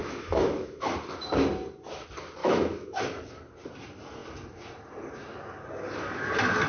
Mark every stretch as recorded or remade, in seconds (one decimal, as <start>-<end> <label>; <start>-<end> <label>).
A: 0.0-0.9 remade; 0.9-2.4 recorded; 2.4-3.0 remade; 3.0-6.7 recorded